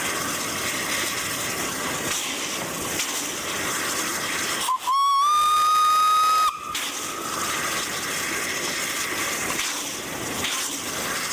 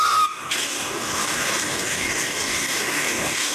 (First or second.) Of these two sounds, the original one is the first